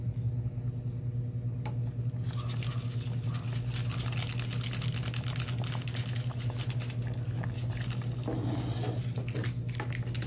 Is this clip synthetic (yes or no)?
no